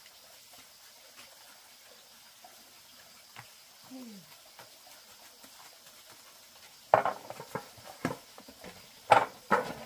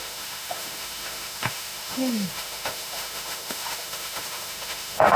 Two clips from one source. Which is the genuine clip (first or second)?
first